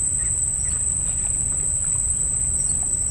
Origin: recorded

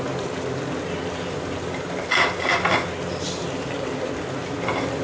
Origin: recorded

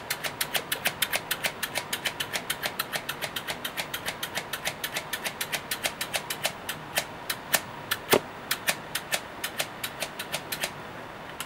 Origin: recorded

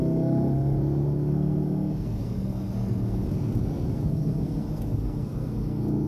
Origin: remade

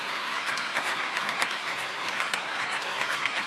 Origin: remade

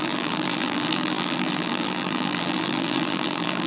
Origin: remade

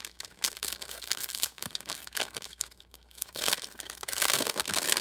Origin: remade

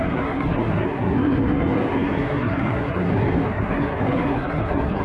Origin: remade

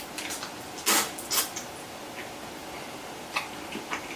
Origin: recorded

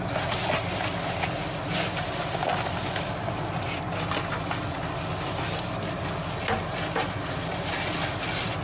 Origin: recorded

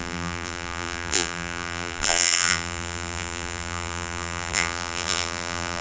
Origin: remade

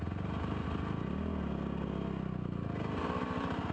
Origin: recorded